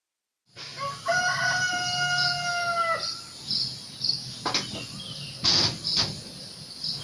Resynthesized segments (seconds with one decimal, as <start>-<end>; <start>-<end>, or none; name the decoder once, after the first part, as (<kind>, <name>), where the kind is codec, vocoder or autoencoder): none